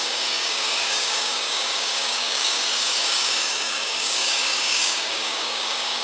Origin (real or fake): fake